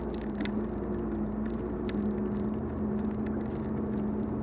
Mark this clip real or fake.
real